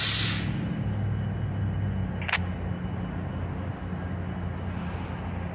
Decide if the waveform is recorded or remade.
recorded